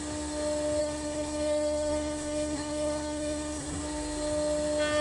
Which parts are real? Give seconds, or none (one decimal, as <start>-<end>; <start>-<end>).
0.0-0.8; 3.8-5.0